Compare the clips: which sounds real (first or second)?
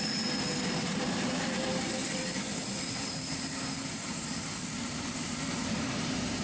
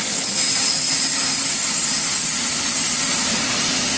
second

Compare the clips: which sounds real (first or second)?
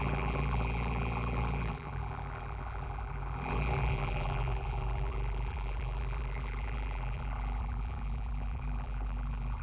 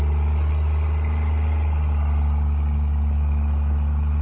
second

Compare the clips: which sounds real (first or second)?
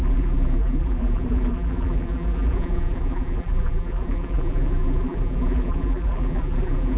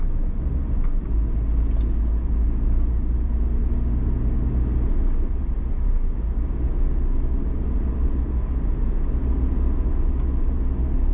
second